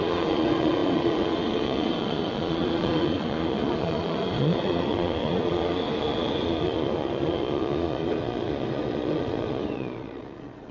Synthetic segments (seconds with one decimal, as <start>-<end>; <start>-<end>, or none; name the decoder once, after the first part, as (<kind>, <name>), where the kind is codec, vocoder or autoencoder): 0.0-10.7 (vocoder, Vocos)